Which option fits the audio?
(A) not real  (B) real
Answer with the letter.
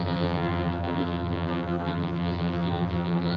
A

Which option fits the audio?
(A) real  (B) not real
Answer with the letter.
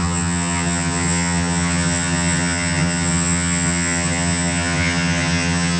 B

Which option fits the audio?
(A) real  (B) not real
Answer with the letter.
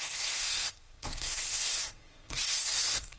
B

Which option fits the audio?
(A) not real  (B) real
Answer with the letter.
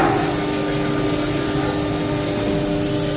B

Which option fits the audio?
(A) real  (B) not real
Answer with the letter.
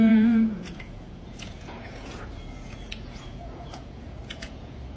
B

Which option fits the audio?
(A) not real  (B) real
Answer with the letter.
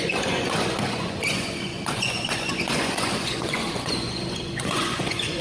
A